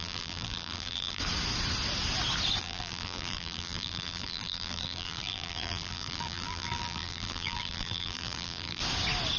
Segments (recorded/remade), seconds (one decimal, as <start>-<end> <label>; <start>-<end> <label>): 0.0-1.2 remade; 1.2-2.6 recorded; 2.6-8.8 remade; 8.8-9.4 recorded